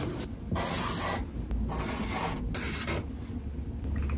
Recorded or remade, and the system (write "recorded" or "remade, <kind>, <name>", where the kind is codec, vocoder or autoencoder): recorded